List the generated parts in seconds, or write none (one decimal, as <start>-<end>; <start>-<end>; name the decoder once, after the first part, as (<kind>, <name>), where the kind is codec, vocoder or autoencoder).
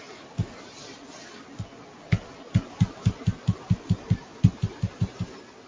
4.3-5.7 (vocoder, BigVGAN v2)